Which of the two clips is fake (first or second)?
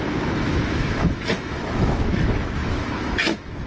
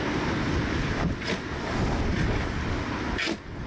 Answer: first